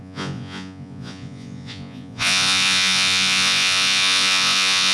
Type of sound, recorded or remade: remade